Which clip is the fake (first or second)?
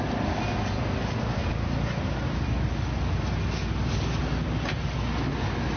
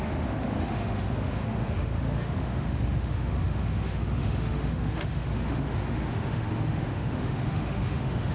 second